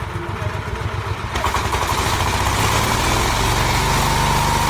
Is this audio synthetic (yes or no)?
no